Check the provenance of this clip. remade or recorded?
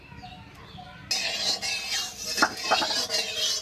recorded